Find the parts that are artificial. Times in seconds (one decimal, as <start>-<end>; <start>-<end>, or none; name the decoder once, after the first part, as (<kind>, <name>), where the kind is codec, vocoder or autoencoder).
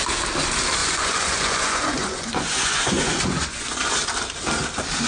0.8-3.9 (vocoder, Vocos)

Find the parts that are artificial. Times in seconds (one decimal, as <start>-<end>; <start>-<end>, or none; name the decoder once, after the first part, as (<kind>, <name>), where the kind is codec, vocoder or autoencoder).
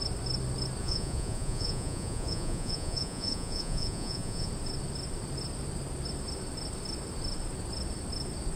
0.8-4.5 (vocoder, Vocos)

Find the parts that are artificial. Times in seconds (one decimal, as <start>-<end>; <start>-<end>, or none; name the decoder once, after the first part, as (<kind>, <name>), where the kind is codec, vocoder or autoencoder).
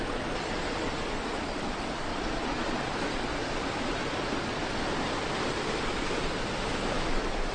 2.1-3.6 (vocoder, Vocos)